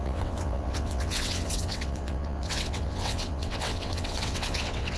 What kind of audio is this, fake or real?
fake